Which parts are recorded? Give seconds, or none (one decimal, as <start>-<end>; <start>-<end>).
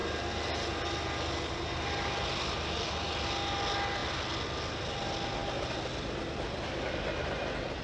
0.0-7.8